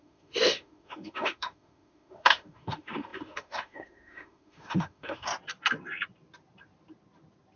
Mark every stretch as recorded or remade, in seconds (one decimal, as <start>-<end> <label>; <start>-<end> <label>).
0.0-5.3 remade; 5.3-7.6 recorded

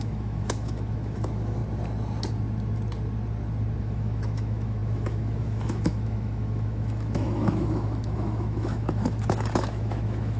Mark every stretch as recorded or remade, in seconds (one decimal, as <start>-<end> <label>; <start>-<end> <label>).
0.0-1.6 remade; 1.6-3.8 recorded; 3.8-10.4 remade